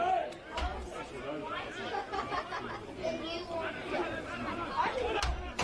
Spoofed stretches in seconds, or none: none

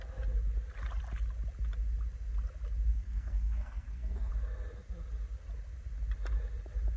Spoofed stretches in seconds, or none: 2.9-4.3 (codec, SNAC)

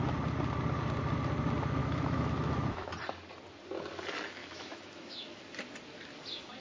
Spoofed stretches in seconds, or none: 1.8-2.9 (autoencoder, DAC-VAE); 4.4-5.4